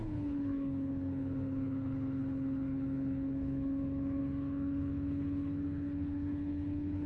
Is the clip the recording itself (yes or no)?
no